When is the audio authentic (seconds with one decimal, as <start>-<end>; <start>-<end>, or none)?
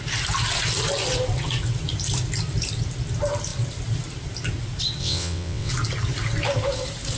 0.0-5.0; 5.7-7.2